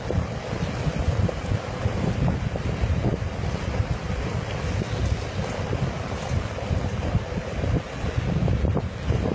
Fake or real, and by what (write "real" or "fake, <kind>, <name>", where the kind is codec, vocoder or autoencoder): real